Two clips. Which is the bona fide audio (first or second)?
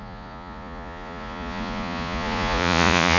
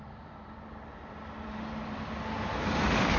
second